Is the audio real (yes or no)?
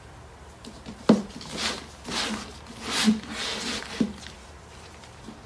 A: yes